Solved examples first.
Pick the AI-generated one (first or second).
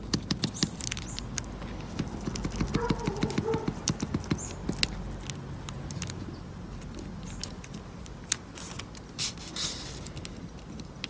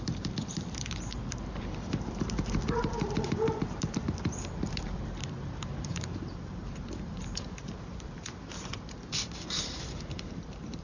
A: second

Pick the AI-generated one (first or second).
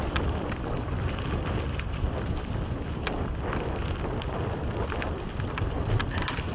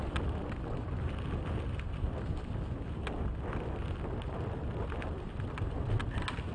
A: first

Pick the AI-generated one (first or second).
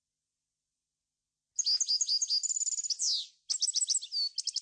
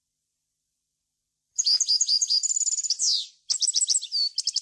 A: second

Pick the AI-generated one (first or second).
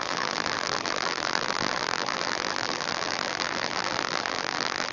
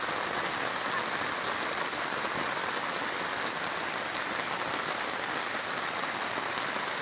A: first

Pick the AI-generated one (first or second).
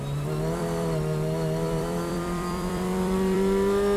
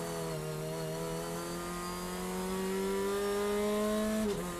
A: first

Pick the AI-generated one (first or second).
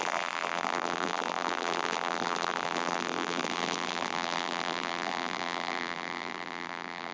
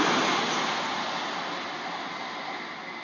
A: first